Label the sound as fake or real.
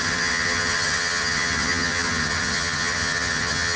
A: fake